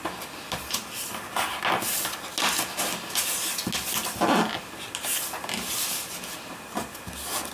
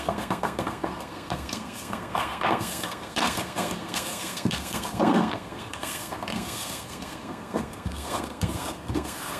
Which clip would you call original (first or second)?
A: first